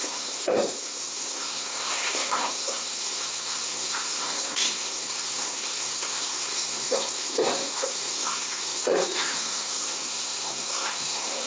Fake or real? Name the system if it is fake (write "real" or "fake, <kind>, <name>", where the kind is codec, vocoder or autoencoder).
fake, codec, SNAC